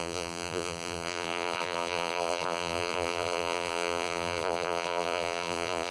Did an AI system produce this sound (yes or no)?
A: yes